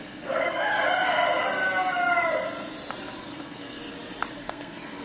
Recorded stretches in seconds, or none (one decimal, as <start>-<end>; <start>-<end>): 0.7-3.2; 3.8-4.3